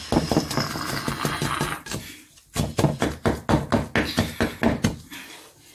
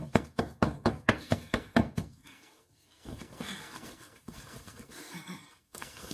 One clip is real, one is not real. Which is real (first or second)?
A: first